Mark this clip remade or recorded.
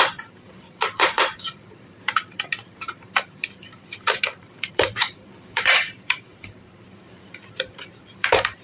remade